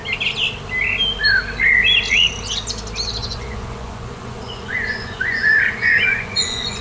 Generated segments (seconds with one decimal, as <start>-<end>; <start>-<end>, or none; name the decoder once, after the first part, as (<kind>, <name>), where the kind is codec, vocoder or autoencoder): 3.2-6.8 (vocoder, Vocos)